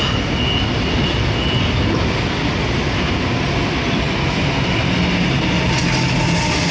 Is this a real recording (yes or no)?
yes